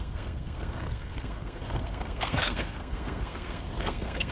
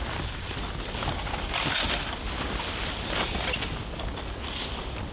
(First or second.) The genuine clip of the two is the second